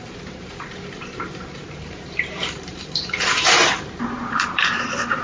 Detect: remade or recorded remade